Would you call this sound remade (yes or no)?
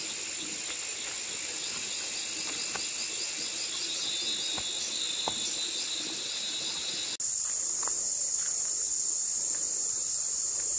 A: no